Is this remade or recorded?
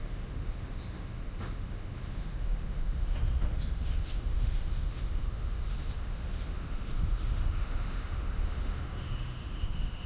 remade